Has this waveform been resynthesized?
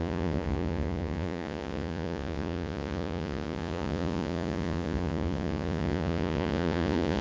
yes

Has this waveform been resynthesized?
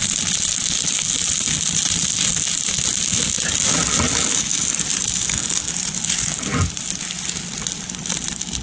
no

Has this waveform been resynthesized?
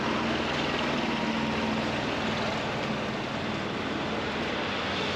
no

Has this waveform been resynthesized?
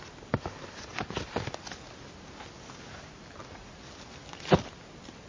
no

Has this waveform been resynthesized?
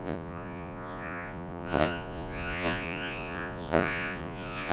yes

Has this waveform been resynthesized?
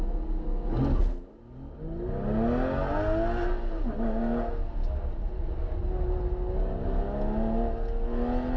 no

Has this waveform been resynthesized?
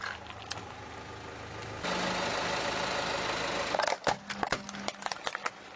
no